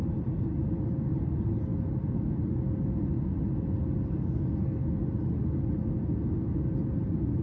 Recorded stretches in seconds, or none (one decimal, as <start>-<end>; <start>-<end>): 0.0-7.4